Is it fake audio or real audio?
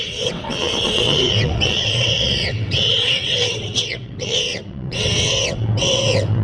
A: fake